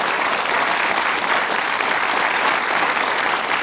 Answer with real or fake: real